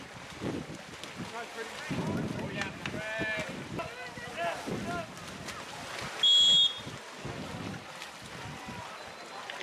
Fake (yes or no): no